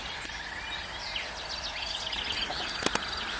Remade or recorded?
recorded